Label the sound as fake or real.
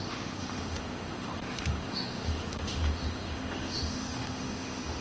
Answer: fake